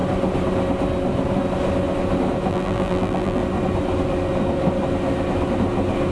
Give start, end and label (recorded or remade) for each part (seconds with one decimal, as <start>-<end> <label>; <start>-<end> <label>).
0.0-2.5 recorded; 2.5-3.4 remade; 3.4-6.1 recorded